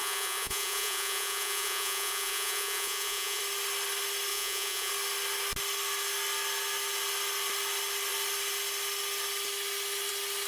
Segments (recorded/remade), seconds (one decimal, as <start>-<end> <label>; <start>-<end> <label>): 0.0-3.4 remade; 3.4-4.3 recorded; 4.3-4.9 remade; 4.9-10.5 recorded